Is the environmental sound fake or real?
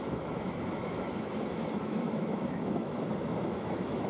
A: fake